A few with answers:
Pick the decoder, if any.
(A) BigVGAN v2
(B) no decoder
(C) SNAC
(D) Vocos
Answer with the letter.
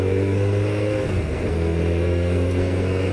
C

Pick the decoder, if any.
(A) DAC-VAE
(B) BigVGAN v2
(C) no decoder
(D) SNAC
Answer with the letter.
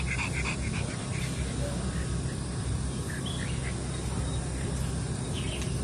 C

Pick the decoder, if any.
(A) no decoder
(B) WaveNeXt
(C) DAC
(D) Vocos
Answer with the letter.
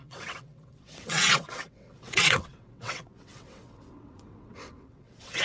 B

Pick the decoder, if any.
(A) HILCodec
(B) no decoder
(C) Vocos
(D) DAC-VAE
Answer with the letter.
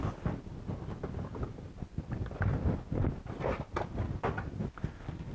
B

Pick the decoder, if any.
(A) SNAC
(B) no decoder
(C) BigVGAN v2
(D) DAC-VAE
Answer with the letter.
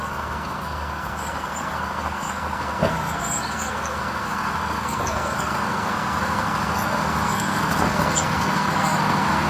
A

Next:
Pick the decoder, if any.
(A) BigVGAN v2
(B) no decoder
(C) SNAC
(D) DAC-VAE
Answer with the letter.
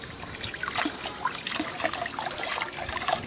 B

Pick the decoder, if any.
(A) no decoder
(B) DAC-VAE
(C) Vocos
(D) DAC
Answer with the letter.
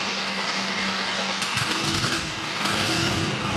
D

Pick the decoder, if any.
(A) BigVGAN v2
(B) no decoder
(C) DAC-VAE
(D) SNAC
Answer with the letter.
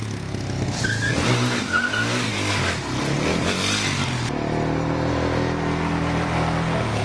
B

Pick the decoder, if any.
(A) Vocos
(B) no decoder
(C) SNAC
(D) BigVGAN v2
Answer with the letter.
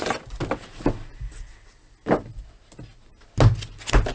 B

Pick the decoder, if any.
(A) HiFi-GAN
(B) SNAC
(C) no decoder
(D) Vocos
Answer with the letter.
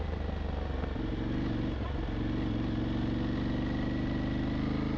C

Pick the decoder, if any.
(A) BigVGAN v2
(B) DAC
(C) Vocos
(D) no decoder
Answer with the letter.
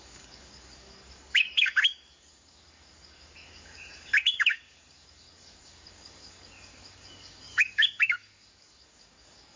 B